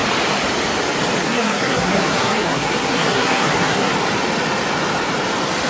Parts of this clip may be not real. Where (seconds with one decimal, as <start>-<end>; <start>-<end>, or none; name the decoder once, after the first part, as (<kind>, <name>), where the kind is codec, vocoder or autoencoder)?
1.2-3.9 (codec, SNAC)